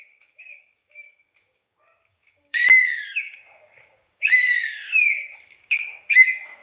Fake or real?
fake